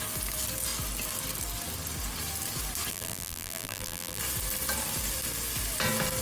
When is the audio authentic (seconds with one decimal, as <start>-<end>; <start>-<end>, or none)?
0.0-2.9; 4.2-6.2